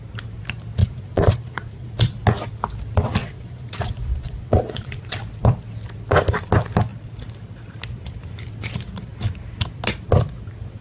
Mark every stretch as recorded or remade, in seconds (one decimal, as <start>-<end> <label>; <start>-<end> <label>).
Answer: 0.0-0.8 recorded; 0.8-1.9 remade; 1.9-3.2 recorded; 3.2-5.2 remade; 5.2-10.8 recorded